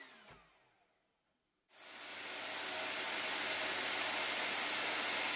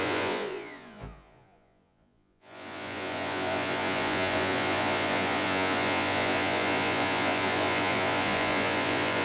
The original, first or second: first